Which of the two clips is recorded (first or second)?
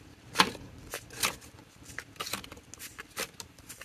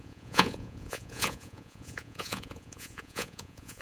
first